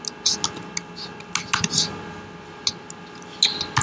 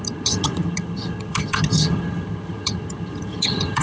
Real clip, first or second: first